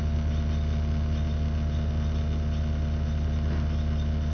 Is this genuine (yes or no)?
yes